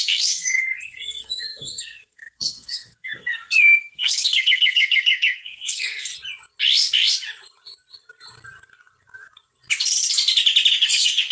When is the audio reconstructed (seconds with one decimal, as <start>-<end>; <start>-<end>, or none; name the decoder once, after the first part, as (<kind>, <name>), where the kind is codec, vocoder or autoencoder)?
0.0-6.1 (codec, SNAC); 10.7-11.3